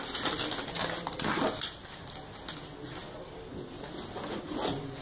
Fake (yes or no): no